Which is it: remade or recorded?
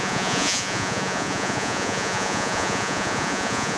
remade